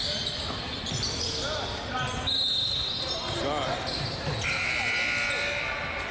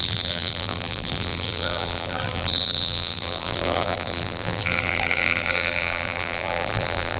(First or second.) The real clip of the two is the first